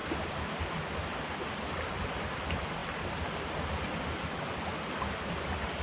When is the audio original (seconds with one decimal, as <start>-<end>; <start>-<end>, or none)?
0.0-5.8